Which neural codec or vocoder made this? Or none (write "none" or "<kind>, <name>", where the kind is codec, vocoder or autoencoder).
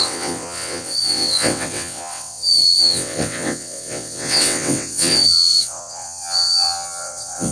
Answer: vocoder, WaveNeXt